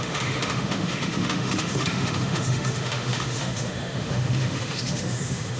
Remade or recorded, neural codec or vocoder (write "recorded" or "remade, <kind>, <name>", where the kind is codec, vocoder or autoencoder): remade, autoencoder, DAC-VAE